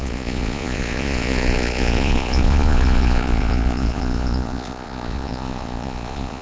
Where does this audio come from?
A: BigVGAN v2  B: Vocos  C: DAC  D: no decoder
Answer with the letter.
B